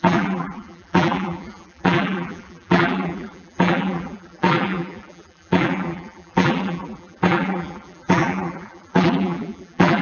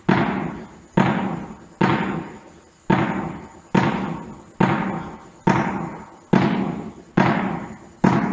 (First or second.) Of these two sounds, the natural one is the second